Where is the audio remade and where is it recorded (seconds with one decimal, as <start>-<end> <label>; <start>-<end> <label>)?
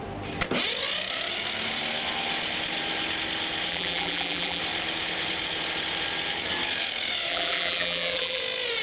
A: 0.0-3.7 recorded; 3.7-4.6 remade; 4.6-7.3 recorded; 7.3-8.4 remade; 8.4-8.8 recorded